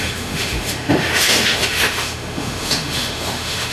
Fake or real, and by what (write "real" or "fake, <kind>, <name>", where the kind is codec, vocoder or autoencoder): fake, autoencoder, DAC-VAE